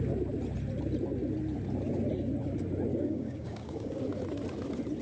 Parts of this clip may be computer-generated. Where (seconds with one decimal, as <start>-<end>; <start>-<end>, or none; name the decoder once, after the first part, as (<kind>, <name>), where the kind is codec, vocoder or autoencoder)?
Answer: 2.9-4.0 (codec, DAC)